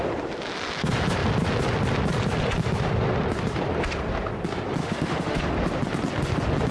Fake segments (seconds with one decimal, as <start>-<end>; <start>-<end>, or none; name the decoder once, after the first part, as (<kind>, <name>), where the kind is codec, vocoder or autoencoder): 4.8-5.4 (autoencoder, DAC-VAE)